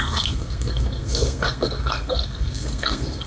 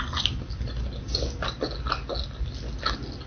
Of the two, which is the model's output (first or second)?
first